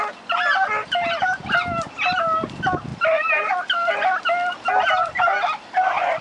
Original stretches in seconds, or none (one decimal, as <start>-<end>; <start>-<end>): 0.0-2.9; 4.7-6.2